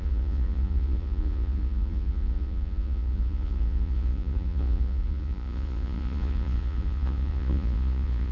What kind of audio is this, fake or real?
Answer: fake